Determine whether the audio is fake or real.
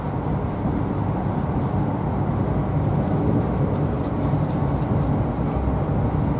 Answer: real